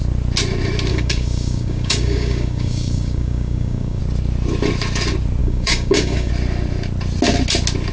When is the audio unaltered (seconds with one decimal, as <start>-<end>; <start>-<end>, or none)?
0.0-0.9; 4.0-5.4; 6.3-7.9

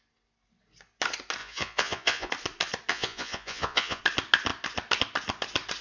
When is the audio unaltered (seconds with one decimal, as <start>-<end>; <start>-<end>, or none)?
0.0-1.4; 2.3-2.9; 4.0-5.8

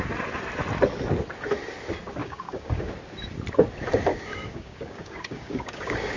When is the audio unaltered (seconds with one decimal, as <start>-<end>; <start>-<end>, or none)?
0.0-2.2; 2.9-4.1

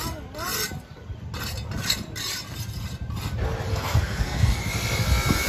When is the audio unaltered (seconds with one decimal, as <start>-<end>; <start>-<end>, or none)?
0.0-3.7; 4.6-5.5